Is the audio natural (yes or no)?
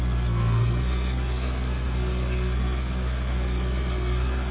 no